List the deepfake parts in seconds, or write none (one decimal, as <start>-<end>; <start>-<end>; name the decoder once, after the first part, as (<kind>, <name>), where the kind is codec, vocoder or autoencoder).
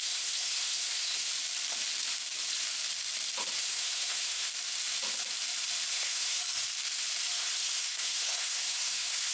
0.0-1.3 (codec, SNAC); 3.6-4.5; 5.9-6.4; 7.4-9.3